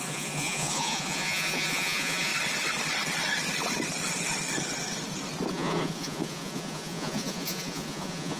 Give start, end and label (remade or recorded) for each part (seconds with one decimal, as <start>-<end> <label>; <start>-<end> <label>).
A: 0.0-2.3 remade; 2.3-5.5 recorded; 5.5-8.4 remade